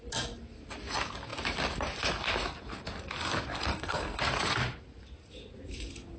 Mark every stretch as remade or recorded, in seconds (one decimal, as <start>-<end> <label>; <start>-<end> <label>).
0.0-3.7 recorded; 3.7-4.2 remade; 4.2-6.2 recorded